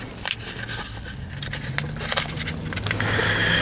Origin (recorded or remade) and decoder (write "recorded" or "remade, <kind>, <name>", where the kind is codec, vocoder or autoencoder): recorded